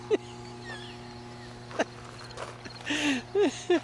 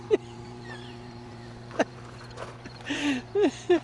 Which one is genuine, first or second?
first